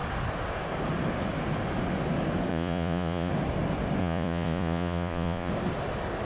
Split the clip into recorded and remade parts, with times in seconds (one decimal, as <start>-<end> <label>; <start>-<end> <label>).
0.0-2.5 recorded; 2.5-3.3 remade; 3.3-4.0 recorded; 4.0-5.5 remade; 5.5-6.2 recorded

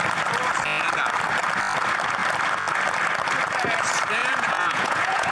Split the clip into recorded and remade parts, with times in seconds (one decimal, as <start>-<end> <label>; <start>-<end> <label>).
0.0-4.2 recorded; 4.2-5.3 remade

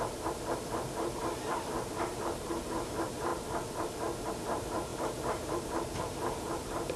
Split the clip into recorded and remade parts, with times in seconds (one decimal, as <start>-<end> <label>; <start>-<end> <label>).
0.0-3.3 remade; 3.3-4.3 recorded; 4.3-7.0 remade

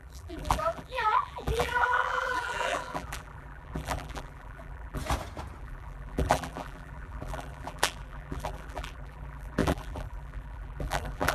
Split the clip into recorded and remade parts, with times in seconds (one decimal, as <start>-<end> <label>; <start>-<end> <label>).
0.0-5.0 remade; 5.0-5.6 recorded; 5.6-11.3 remade

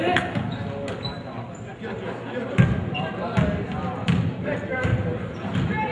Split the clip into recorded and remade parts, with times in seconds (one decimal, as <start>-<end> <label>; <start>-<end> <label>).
0.0-5.9 recorded